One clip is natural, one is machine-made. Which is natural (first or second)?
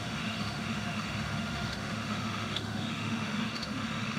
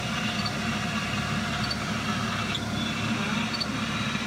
second